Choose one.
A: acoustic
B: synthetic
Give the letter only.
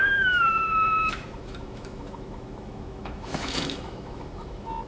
B